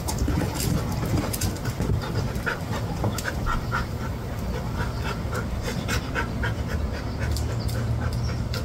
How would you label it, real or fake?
real